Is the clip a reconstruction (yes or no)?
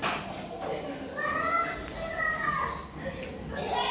no